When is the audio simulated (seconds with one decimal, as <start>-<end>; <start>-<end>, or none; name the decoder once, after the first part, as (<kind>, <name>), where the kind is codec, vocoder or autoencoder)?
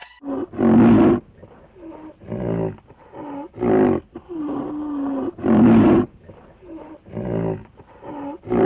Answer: 4.1-6.9 (vocoder, BigVGAN v2); 7.6-8.7